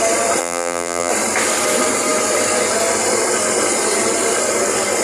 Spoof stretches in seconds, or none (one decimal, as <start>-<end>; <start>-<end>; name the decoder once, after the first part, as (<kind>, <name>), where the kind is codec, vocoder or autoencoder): 0.4-1.1 (vocoder, BigVGAN v2)